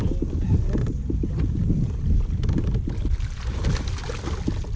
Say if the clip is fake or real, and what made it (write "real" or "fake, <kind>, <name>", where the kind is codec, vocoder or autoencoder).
real